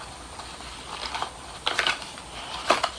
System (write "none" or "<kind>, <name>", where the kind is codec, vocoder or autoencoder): vocoder, BigVGAN v2